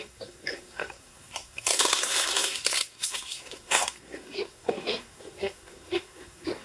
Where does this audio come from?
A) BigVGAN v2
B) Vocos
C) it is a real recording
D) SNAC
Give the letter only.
D